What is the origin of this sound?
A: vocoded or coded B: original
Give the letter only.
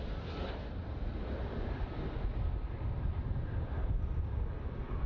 B